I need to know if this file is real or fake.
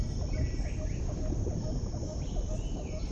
real